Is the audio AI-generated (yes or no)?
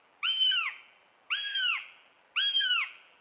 yes